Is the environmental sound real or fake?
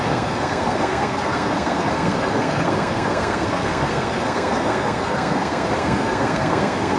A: fake